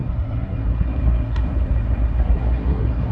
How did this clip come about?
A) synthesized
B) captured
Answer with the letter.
A